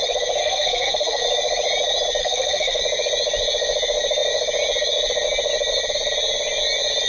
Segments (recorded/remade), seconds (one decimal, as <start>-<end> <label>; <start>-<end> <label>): 0.0-0.4 recorded; 0.4-1.2 remade; 1.2-2.2 recorded; 2.2-2.8 remade; 2.8-7.1 recorded